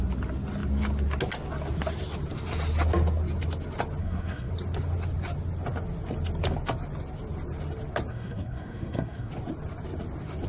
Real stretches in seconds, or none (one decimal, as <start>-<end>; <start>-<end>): 0.0-4.0; 4.5-8.1; 9.3-10.5